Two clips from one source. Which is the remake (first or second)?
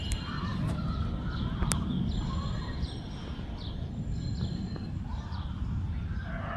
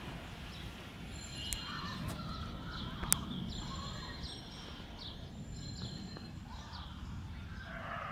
first